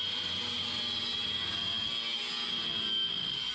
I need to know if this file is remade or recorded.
recorded